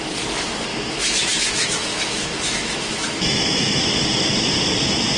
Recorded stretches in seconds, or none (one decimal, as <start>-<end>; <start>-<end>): 0.0-0.7; 3.8-5.2